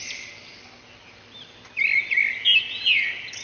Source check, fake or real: real